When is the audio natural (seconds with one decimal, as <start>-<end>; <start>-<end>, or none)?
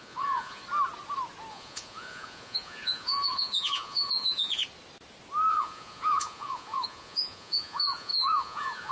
0.6-1.5; 4.6-5.5